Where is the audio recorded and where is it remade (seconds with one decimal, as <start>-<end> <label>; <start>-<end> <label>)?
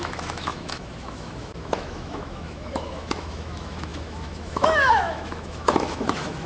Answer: 0.0-6.5 remade